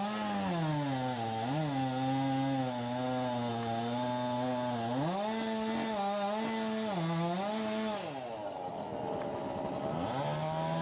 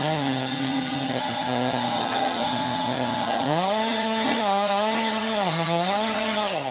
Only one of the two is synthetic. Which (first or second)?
second